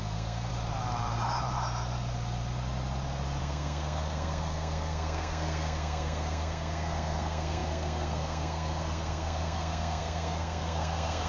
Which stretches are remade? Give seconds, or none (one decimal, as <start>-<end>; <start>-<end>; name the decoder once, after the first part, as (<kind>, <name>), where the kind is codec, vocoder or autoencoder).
0.0-0.5 (codec, SNAC); 3.4-11.3